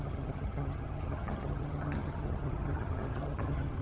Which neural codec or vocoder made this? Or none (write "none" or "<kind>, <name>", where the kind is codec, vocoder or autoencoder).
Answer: vocoder, HiFi-GAN